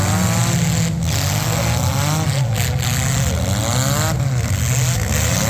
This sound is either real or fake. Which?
real